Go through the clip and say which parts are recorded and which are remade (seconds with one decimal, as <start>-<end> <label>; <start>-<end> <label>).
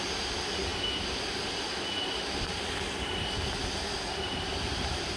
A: 0.0-5.2 recorded